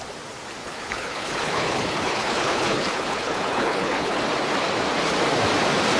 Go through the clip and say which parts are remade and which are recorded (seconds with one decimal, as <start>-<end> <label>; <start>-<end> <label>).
0.0-0.6 recorded; 0.6-4.2 remade; 4.2-6.0 recorded